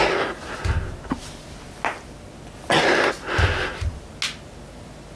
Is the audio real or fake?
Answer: real